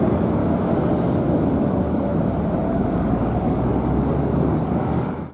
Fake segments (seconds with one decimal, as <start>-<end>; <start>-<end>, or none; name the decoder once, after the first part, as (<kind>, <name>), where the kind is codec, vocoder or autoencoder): 0.0-0.4 (codec, DAC); 1.7-2.1; 2.7-5.3